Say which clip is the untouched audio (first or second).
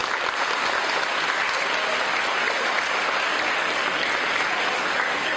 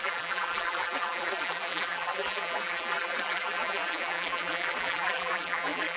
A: first